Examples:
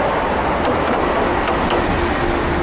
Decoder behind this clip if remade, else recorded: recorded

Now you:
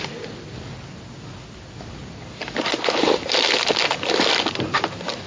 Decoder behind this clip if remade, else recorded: recorded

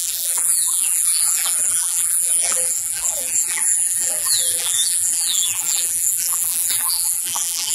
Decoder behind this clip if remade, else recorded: remade, vocoder, BigVGAN v2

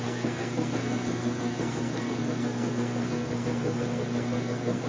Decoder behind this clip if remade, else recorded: remade, codec, SNAC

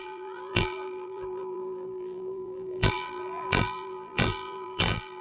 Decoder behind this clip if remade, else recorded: remade, vocoder, BigVGAN v2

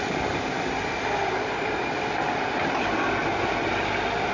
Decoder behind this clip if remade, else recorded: recorded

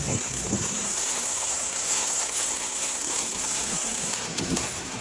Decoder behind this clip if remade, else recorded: remade, codec, SNAC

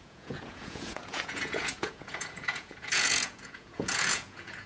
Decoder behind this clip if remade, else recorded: remade, vocoder, Vocos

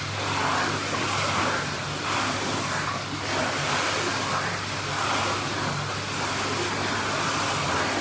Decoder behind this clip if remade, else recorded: recorded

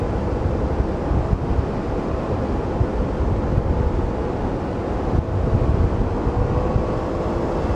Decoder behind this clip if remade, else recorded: recorded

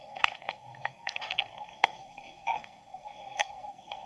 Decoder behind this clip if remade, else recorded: remade, codec, SNAC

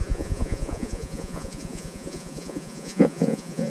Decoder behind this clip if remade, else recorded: remade, vocoder, Vocos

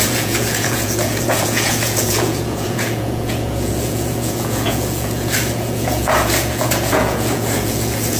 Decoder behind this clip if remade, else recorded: remade, vocoder, Vocos